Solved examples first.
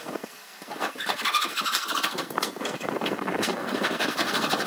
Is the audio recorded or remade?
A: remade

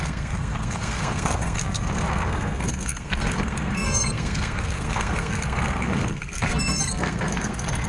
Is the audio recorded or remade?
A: remade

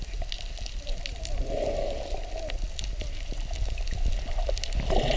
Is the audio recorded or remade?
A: recorded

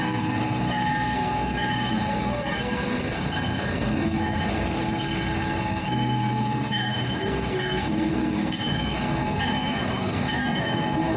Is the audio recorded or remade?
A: remade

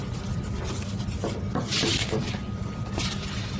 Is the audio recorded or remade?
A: recorded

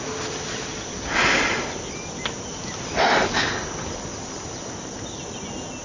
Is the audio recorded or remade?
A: recorded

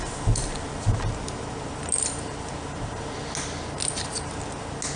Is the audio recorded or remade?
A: recorded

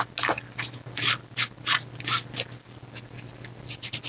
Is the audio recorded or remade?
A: recorded